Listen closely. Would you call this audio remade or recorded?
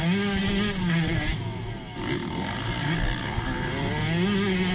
recorded